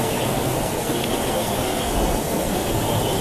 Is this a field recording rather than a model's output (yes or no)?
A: no